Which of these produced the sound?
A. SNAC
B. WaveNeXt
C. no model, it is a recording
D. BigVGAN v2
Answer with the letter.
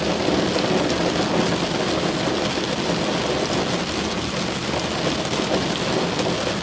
C